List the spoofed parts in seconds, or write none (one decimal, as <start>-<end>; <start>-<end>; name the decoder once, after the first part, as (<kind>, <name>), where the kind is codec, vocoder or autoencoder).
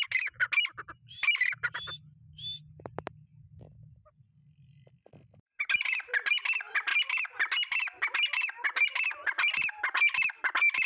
none